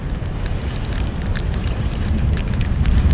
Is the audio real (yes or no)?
no